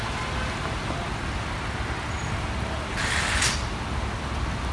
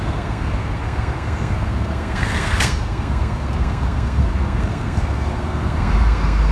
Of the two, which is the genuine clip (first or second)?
first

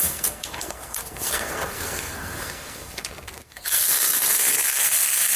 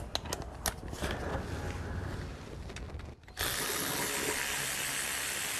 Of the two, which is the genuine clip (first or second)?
second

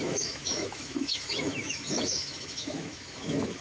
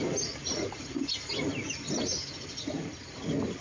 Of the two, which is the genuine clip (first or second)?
second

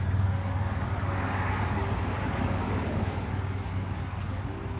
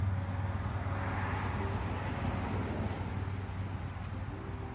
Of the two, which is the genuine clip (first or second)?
second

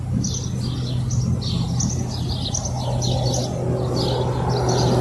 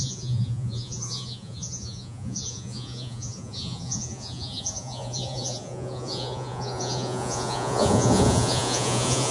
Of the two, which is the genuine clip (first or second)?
first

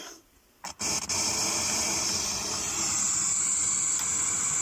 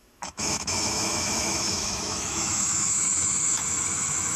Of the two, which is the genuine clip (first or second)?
first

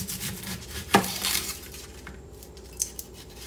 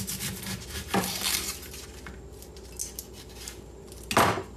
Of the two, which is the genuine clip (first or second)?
second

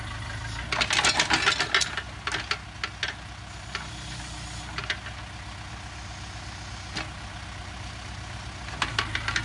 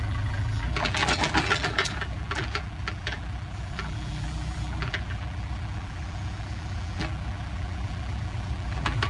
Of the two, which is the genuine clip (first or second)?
first